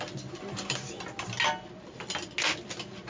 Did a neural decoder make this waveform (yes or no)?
no